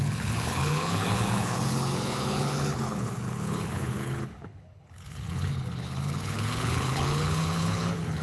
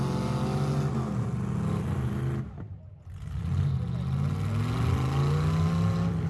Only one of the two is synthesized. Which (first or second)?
first